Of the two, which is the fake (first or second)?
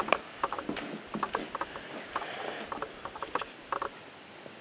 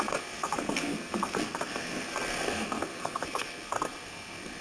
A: second